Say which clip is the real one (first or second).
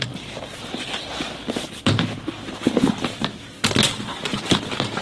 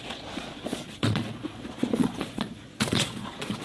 first